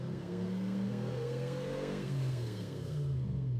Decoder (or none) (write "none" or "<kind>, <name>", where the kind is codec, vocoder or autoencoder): codec, SNAC